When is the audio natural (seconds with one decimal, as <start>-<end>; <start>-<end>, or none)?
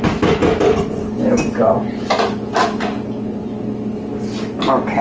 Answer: 0.0-5.0